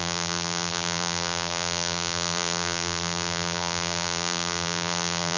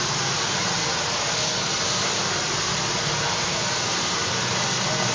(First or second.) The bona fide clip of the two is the second